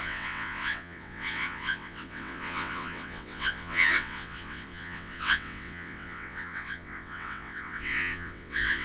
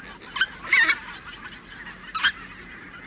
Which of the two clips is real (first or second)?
second